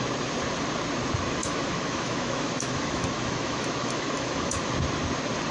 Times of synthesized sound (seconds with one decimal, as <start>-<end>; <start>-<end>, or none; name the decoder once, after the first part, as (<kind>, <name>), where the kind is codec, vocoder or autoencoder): 1.4-4.7 (autoencoder, DAC-VAE)